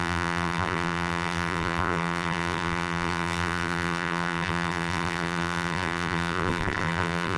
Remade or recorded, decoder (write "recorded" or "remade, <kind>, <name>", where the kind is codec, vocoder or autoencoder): remade, vocoder, BigVGAN v2